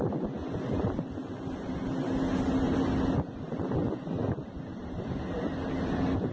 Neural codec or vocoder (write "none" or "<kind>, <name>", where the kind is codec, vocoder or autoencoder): none